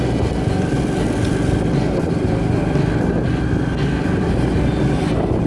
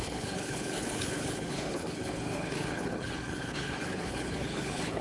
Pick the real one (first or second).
first